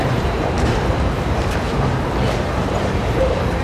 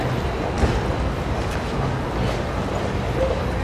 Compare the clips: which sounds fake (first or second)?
first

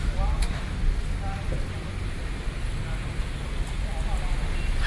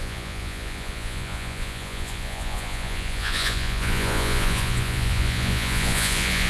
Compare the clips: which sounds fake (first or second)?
second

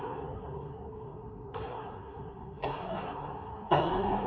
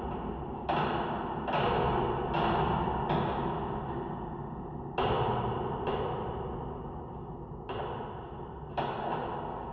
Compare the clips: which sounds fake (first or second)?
first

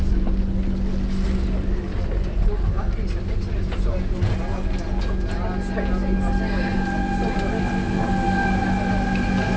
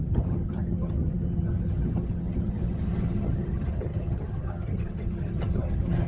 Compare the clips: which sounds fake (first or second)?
second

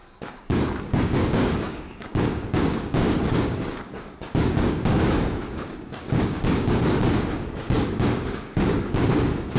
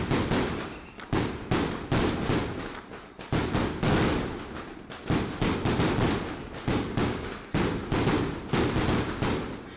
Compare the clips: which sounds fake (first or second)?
first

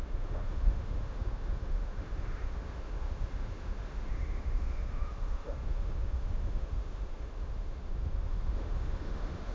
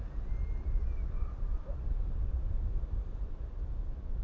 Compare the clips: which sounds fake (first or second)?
first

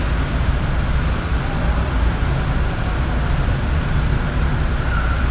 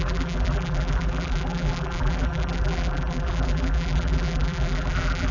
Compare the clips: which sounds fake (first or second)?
second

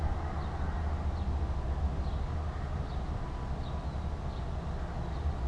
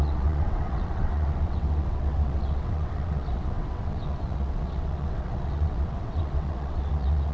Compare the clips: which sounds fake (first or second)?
second